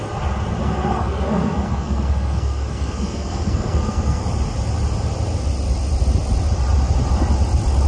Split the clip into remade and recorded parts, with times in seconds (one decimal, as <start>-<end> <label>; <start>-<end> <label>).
0.0-0.6 recorded; 0.6-4.2 remade; 4.2-7.9 recorded